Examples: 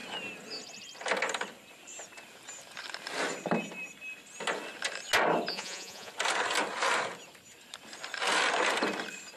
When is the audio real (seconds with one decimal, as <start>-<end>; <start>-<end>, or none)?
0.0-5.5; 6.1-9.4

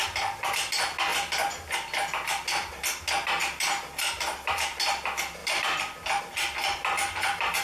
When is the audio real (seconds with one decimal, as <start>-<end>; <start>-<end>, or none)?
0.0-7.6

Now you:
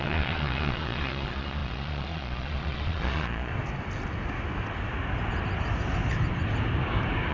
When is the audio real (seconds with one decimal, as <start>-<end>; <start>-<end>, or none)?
3.5-7.3

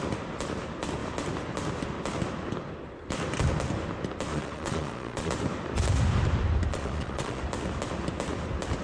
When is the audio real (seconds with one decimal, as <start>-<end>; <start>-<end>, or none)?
0.0-4.3; 5.3-6.7; 7.4-8.8